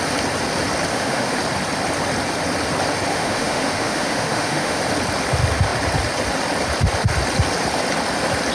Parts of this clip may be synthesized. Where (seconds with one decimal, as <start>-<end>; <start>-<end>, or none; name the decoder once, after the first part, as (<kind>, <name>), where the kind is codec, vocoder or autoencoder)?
0.9-1.4 (autoencoder, DAC-VAE); 3.1-4.8